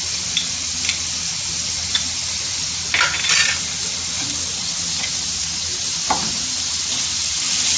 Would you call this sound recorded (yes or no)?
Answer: yes